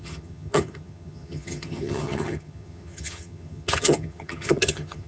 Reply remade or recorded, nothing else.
remade